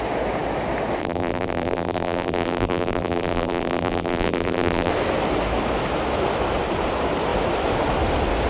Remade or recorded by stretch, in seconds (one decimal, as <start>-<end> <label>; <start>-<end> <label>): 0.0-1.0 recorded; 1.0-4.9 remade; 4.9-8.5 recorded